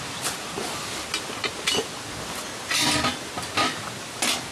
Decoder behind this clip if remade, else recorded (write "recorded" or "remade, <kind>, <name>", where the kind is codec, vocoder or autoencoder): recorded